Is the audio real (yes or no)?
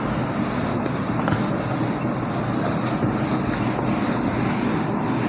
yes